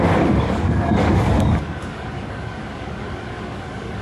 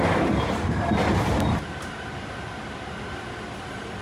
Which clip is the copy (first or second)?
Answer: first